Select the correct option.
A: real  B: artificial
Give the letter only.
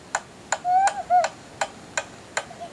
A